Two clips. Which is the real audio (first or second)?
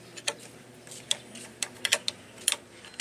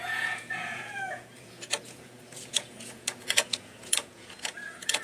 first